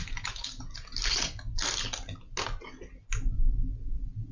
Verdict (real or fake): real